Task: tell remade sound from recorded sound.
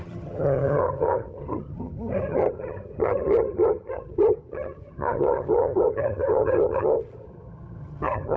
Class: remade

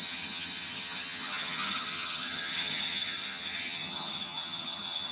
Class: remade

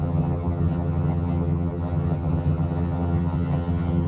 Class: remade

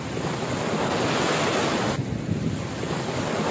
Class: recorded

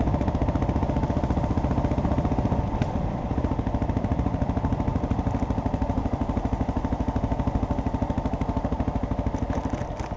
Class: recorded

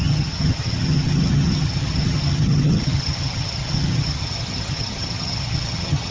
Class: remade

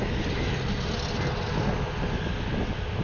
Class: recorded